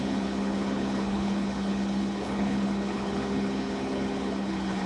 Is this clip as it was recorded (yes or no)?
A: no